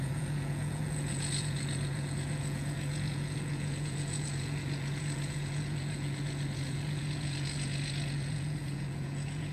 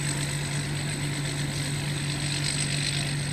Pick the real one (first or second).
second